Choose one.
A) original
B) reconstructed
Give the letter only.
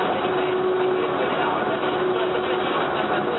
A